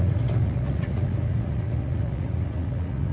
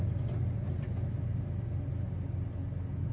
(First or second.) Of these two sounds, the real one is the second